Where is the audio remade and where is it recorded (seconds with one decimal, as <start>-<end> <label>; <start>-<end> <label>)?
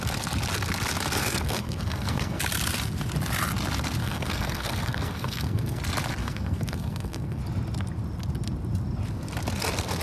0.0-1.2 recorded; 1.2-2.4 remade; 2.4-4.0 recorded; 4.0-5.8 remade; 5.8-6.2 recorded; 6.2-7.4 remade; 7.4-10.0 recorded